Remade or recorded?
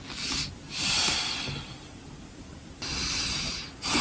recorded